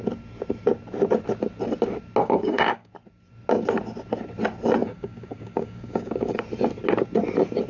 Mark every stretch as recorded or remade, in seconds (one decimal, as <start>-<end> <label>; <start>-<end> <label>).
0.0-2.2 recorded; 2.2-2.9 remade; 2.9-4.8 recorded; 4.8-6.4 remade; 6.4-7.7 recorded